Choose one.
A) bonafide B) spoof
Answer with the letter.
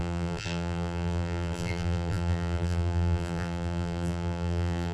B